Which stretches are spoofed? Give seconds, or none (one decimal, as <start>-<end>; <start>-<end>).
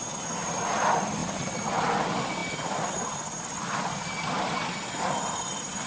none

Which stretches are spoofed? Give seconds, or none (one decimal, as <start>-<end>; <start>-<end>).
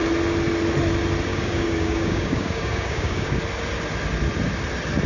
1.3-3.4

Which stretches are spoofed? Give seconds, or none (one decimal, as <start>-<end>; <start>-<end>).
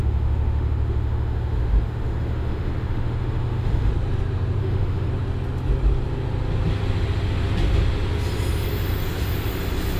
0.0-3.9; 4.6-5.1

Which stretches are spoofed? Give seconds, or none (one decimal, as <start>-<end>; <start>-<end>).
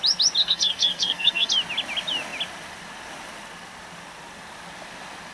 0.4-1.5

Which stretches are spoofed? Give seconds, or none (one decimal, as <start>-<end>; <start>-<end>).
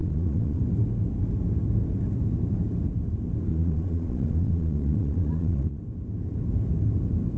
0.0-0.6; 3.5-5.8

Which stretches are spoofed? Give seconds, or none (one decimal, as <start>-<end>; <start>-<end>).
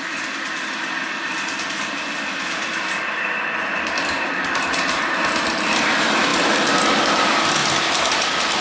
0.0-7.6; 8.1-8.6